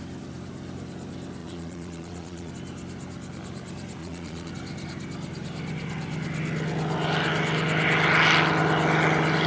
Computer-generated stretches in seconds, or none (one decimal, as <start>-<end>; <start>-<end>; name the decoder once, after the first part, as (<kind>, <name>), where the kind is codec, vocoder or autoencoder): 1.4-2.5 (vocoder, Vocos); 4.0-4.5